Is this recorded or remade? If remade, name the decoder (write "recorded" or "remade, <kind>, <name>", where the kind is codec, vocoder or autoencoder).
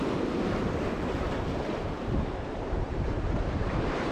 remade, vocoder, BigVGAN v2